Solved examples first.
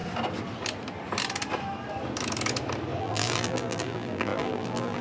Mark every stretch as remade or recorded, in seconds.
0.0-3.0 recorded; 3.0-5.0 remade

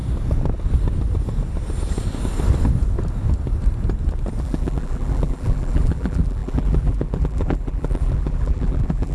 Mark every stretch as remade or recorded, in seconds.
0.0-4.4 recorded; 4.4-9.1 remade

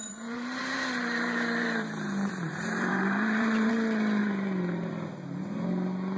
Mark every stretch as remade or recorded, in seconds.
0.0-3.7 remade; 3.7-4.2 recorded; 4.2-4.9 remade; 4.9-6.2 recorded

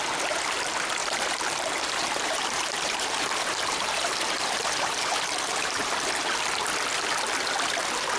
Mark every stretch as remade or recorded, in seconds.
0.0-1.0 recorded; 1.0-5.9 remade; 5.9-8.2 recorded

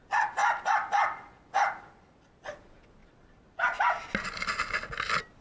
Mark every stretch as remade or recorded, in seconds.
0.0-3.0 recorded; 3.0-4.0 remade; 4.0-5.4 recorded